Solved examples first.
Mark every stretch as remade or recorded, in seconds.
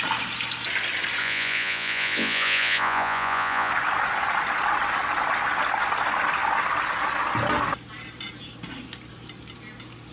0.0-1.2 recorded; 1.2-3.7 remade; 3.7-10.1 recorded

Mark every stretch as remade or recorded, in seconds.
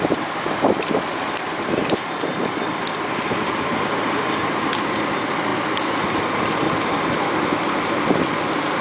0.0-1.1 recorded; 1.1-2.6 remade; 2.6-8.8 recorded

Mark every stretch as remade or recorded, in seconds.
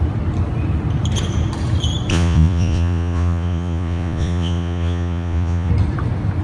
0.0-2.1 recorded; 2.1-5.7 remade; 5.7-6.4 recorded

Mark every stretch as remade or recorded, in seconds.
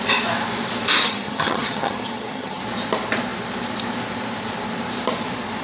0.0-1.0 recorded; 1.0-2.6 remade; 2.6-5.6 recorded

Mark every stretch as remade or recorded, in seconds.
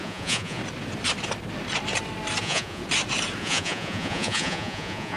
0.0-0.6 remade; 0.6-2.4 recorded; 2.4-2.8 remade; 2.8-3.4 recorded; 3.4-5.2 remade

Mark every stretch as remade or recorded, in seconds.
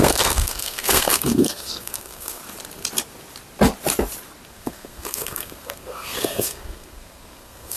0.0-2.4 remade; 2.4-4.5 recorded; 4.5-7.8 remade